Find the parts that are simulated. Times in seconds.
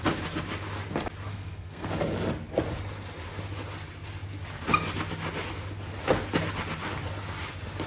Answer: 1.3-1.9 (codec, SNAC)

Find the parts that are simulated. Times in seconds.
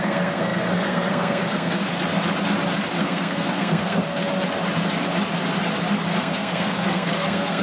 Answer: 0.0-1.8 (codec, SNAC); 3.0-4.0; 6.2-7.6